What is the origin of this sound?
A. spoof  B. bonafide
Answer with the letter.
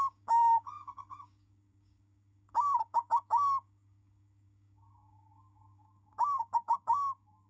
A